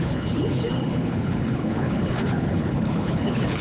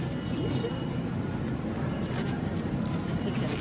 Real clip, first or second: second